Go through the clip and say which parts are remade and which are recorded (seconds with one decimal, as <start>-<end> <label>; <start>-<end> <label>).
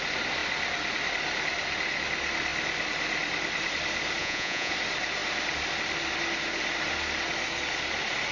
0.0-4.2 recorded; 4.2-4.7 remade; 4.7-8.3 recorded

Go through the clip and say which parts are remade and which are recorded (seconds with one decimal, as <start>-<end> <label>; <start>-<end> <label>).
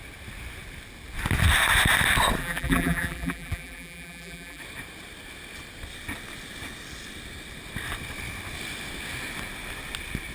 0.0-2.4 recorded; 2.4-4.6 remade; 4.6-10.3 recorded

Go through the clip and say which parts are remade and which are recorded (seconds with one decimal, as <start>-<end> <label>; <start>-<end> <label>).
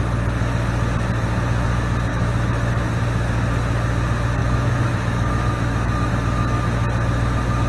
0.0-2.1 recorded; 2.1-2.9 remade; 2.9-4.4 recorded; 4.4-6.1 remade; 6.1-7.7 recorded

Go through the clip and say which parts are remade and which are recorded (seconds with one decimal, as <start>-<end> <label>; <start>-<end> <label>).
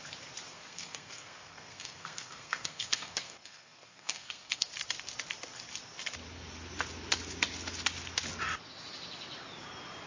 0.0-0.5 recorded; 0.5-4.7 remade; 4.7-10.1 recorded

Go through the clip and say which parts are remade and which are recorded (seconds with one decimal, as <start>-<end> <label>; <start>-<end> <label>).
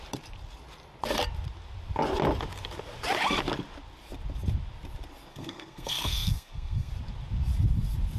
0.0-5.3 recorded; 5.3-6.9 remade; 6.9-8.2 recorded